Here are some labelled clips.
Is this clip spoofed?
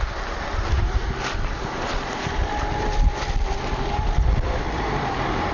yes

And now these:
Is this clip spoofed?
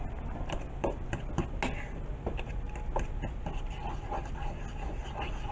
no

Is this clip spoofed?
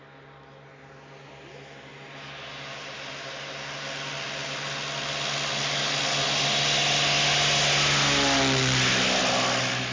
no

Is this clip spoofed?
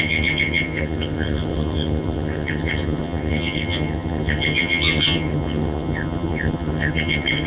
yes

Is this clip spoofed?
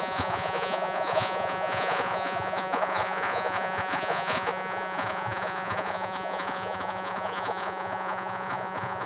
yes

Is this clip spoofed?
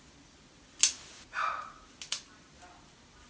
no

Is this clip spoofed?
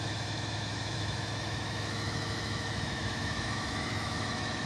yes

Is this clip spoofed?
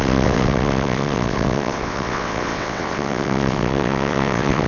yes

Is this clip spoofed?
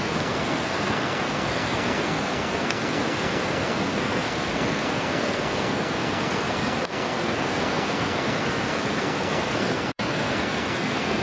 yes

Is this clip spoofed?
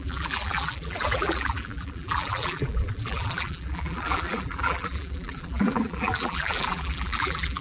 yes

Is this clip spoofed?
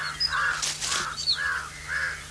no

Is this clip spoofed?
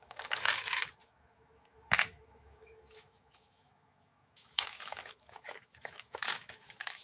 yes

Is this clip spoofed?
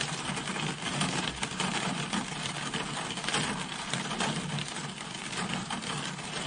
no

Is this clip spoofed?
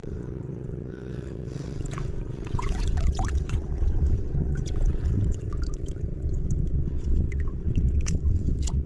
yes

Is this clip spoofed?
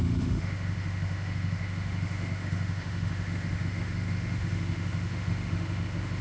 yes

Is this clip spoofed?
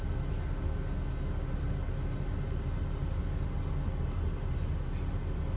no